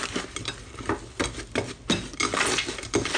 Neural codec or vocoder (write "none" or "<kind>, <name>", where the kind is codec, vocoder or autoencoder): none